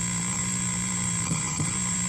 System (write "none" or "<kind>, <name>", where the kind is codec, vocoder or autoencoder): vocoder, BigVGAN v2